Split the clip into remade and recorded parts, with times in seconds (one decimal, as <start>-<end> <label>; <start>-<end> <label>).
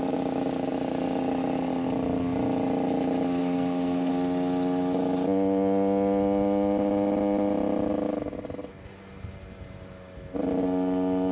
0.0-3.4 recorded; 3.4-4.1 remade; 4.1-11.3 recorded